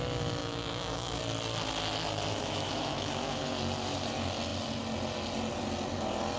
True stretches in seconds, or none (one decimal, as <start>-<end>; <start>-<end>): 0.0-0.4; 1.2-2.3; 3.4-6.4